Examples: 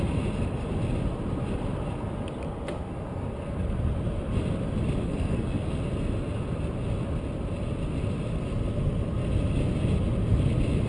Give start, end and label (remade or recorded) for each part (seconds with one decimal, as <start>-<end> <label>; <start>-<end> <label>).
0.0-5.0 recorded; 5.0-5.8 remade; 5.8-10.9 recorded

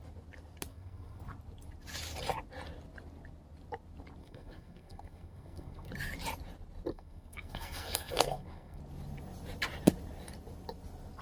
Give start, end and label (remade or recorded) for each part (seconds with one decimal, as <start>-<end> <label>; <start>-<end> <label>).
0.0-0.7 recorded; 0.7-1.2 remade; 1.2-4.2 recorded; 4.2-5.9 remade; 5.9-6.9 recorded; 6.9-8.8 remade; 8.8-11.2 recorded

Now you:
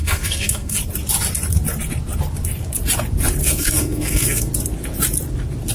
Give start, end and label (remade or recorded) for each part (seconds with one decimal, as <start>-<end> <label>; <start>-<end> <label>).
0.0-0.8 remade; 0.8-3.4 recorded; 3.4-4.5 remade; 4.5-5.7 recorded

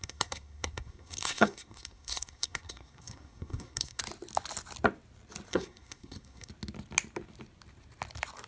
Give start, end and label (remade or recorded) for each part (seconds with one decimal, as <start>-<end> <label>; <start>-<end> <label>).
0.0-4.0 remade; 4.0-5.5 recorded; 5.5-6.5 remade; 6.5-8.5 recorded